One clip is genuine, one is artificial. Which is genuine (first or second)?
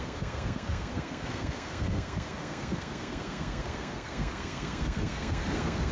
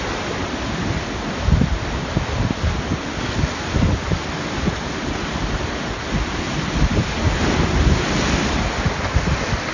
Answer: second